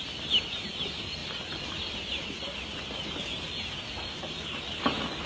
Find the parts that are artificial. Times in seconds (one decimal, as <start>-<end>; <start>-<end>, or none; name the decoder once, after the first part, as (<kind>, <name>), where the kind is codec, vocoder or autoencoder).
none